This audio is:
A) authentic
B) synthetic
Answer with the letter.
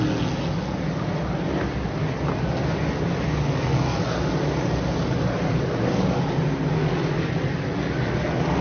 A